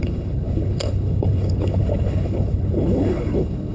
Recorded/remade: remade